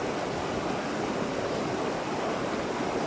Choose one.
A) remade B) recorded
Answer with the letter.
B